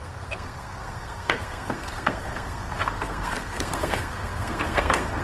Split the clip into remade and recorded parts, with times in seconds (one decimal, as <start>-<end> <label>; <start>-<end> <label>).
0.0-5.2 remade